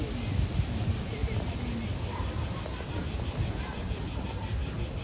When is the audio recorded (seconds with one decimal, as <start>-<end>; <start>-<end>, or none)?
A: 0.0-5.0